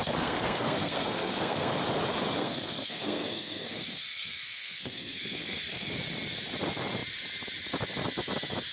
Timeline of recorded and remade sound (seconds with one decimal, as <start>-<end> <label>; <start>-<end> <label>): 0.0-1.7 remade; 1.7-2.4 recorded; 2.4-5.9 remade; 5.9-8.7 recorded